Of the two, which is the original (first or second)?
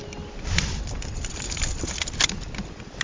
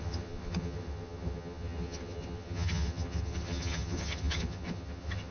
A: first